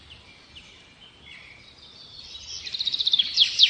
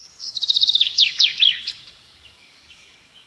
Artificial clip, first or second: second